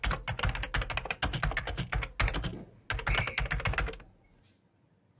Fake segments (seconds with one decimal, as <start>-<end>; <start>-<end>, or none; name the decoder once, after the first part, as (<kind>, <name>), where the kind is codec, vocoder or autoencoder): none